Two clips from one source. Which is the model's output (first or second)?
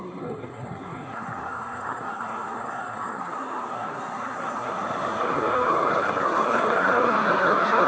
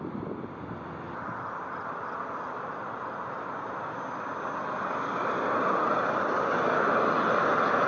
first